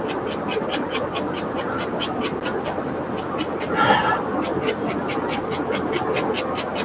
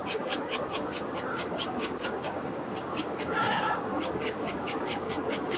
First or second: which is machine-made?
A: second